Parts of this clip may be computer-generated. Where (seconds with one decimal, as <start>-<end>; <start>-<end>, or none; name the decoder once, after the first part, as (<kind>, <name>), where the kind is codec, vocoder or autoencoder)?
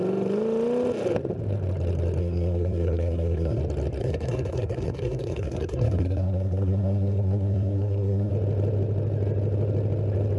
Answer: 2.2-3.6 (codec, SNAC); 4.0-8.3